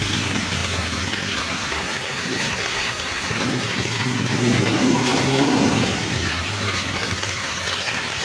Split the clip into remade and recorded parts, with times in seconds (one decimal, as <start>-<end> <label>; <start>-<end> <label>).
0.0-8.2 remade